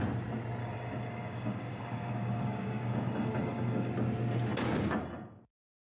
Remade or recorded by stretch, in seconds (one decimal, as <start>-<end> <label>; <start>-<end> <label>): 0.0-0.6 recorded; 0.6-3.9 remade; 3.9-5.9 recorded